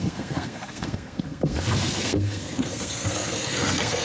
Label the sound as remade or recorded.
remade